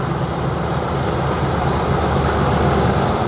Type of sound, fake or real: real